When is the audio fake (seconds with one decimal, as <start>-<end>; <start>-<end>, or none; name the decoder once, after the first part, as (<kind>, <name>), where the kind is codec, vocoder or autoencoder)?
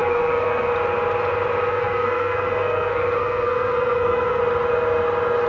0.0-0.7 (codec, SNAC); 1.7-4.4